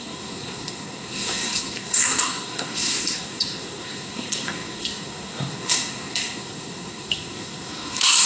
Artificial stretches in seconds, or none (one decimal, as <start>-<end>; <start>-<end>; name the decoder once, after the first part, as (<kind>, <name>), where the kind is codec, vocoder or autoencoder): 0.0-8.3 (codec, SNAC)